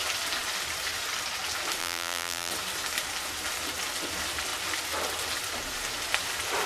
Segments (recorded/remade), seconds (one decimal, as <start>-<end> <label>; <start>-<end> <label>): 0.0-1.8 recorded; 1.8-2.5 remade; 2.5-6.7 recorded